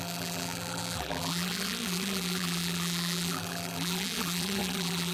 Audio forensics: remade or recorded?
remade